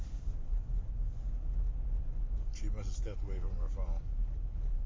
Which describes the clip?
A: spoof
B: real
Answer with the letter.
B